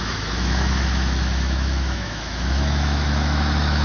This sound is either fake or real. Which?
fake